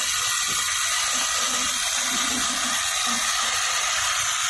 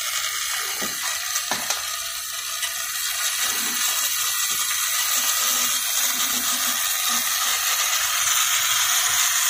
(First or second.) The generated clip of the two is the first